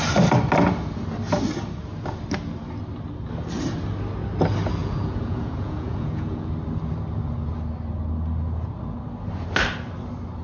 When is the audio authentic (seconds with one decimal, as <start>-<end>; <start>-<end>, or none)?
0.0-4.8; 6.5-10.4